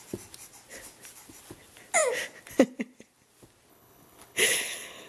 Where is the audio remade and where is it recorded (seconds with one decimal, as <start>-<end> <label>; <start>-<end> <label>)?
0.0-3.7 recorded; 3.7-5.1 remade